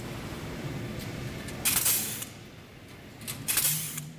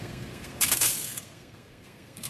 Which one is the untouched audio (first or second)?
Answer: first